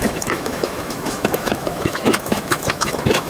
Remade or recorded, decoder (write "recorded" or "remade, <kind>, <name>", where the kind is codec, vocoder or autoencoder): remade, autoencoder, DAC-VAE